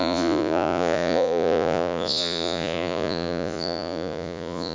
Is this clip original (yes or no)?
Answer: no